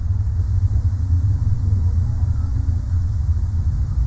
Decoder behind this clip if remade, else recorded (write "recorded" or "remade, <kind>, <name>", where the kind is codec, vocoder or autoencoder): recorded